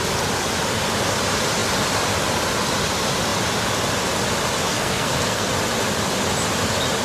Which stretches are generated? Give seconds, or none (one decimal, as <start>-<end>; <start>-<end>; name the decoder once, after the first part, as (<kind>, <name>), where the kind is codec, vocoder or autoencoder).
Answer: 4.7-5.5 (codec, SNAC)